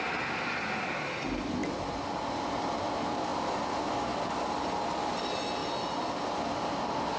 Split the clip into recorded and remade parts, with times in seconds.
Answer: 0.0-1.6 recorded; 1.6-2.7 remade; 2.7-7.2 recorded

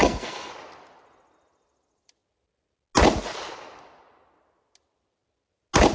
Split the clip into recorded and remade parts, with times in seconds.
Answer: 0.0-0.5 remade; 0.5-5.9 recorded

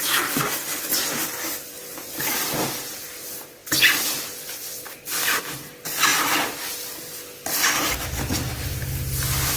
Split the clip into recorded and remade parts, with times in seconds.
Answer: 0.0-9.6 recorded

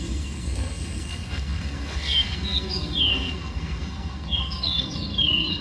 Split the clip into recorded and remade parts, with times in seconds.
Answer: 0.0-5.6 remade

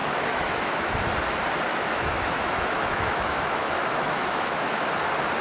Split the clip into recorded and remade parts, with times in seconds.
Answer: 0.0-1.0 remade; 1.0-1.7 recorded; 1.7-4.9 remade; 4.9-5.4 recorded

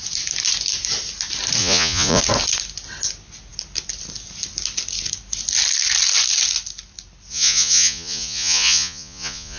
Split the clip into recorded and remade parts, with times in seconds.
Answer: 0.0-1.6 recorded; 1.6-2.2 remade; 2.2-7.3 recorded; 7.3-9.6 remade

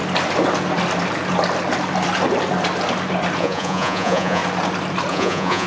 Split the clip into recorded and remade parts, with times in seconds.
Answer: 0.0-3.4 recorded; 3.4-4.4 remade; 4.4-5.1 recorded; 5.1-5.7 remade

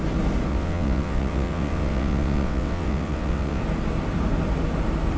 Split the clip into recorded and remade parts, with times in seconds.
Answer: 0.0-0.5 recorded; 0.5-3.6 remade; 3.6-5.2 recorded